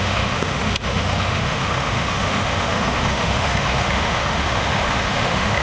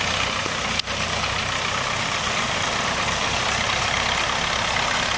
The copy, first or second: first